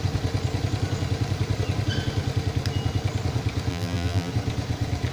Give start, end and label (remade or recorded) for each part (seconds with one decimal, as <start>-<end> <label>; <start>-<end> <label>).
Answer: 0.0-3.7 recorded; 3.7-4.3 remade; 4.3-5.1 recorded

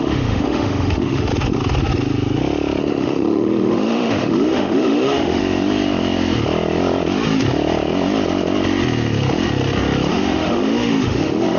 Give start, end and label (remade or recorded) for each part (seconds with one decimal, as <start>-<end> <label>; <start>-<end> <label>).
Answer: 0.0-1.3 remade; 1.3-2.8 recorded; 2.8-5.4 remade; 5.4-10.1 recorded; 10.1-11.6 remade

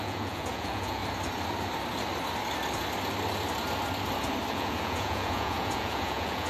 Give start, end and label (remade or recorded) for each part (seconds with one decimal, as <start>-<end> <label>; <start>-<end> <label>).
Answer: 0.0-1.0 remade; 1.0-4.5 recorded; 4.5-6.5 remade

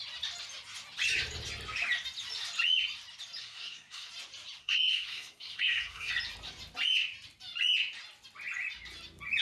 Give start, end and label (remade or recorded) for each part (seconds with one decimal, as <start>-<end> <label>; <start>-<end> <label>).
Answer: 0.0-3.4 recorded; 3.4-4.1 remade; 4.1-4.6 recorded; 4.6-6.1 remade; 6.1-9.4 recorded